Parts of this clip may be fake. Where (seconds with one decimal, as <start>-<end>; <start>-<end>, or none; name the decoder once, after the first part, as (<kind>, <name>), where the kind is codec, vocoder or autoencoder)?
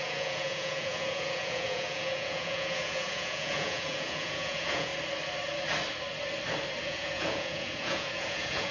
0.0-4.9 (vocoder, Vocos); 6.8-8.7